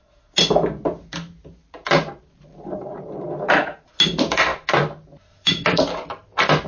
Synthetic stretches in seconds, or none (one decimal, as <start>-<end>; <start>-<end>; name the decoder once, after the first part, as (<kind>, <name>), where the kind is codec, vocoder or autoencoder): 1.6-3.9 (vocoder, BigVGAN v2); 4.5-6.3